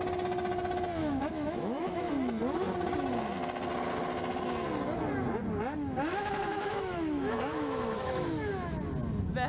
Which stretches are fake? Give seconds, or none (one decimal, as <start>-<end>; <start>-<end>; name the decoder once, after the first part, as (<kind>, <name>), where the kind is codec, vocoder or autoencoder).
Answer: 1.0-2.1 (autoencoder, DAC-VAE); 6.1-8.8